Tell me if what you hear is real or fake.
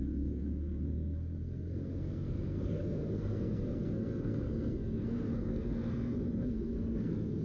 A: fake